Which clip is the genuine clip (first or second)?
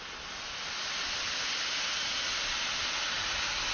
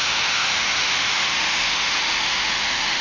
first